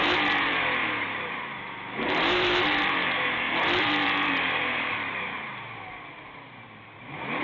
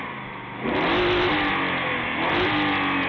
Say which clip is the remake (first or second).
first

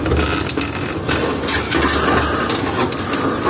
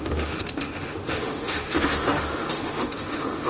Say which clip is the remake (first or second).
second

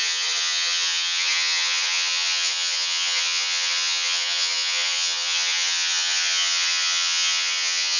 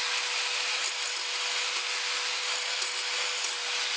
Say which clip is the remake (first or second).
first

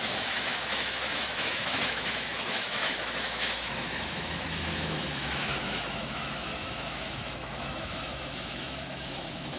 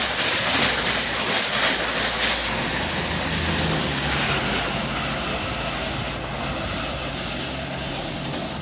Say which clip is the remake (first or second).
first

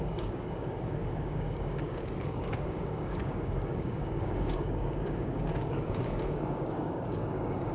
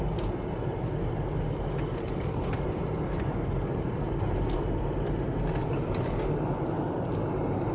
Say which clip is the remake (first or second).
first